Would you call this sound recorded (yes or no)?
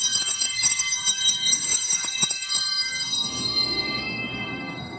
no